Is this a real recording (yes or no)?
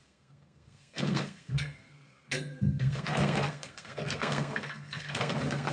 no